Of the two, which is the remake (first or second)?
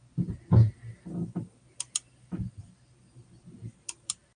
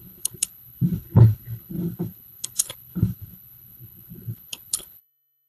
second